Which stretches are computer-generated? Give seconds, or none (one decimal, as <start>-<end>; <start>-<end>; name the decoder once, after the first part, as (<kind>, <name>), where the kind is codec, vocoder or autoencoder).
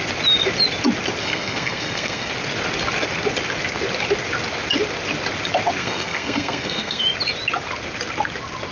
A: 1.2-2.3 (codec, SNAC); 5.8-7.0